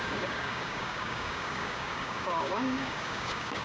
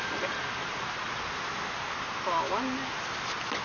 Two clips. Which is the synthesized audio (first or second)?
first